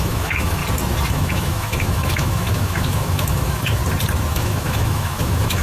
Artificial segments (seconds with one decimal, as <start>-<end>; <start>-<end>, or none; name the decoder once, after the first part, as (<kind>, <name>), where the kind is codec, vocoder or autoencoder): 0.0-0.6 (autoencoder, DAC-VAE); 1.1-3.8; 4.3-5.6